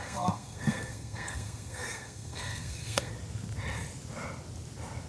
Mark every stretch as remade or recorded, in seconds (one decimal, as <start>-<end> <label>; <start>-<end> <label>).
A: 0.0-3.1 remade; 3.1-5.1 recorded